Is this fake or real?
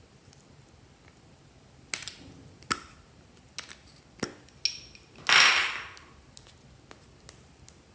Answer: real